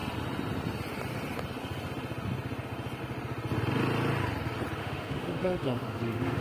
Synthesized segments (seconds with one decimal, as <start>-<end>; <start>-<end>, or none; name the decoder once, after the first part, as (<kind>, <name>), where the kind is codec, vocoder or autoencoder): 4.8-6.4 (autoencoder, DAC-VAE)